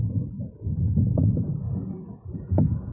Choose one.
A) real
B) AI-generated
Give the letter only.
B